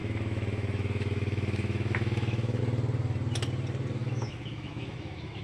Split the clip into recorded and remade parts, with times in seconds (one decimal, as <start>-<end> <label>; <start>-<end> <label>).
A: 0.0-2.6 remade; 2.6-4.0 recorded; 4.0-5.4 remade